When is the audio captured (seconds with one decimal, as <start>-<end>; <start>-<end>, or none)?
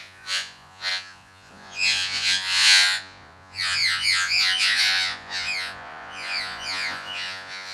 none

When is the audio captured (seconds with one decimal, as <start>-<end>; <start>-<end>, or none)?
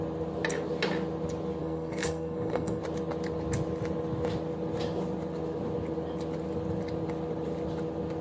0.0-1.6; 2.8-8.2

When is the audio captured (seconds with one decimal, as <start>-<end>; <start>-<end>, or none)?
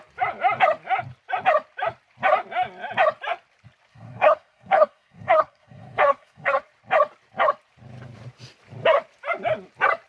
0.0-3.9; 6.6-10.1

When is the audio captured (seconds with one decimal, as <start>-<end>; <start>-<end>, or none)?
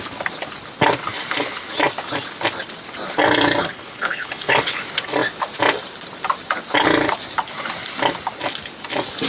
0.0-3.6; 4.8-9.3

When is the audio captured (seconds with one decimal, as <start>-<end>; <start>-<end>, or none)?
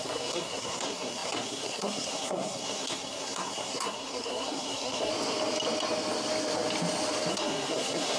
5.1-7.3